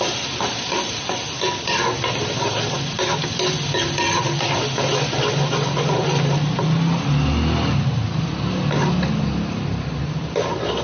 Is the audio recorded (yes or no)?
yes